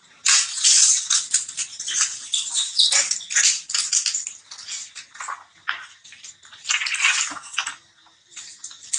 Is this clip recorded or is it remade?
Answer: recorded